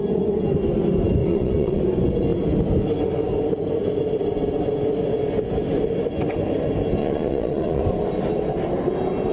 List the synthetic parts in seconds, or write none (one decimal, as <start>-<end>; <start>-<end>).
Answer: 1.2-1.8; 7.0-7.8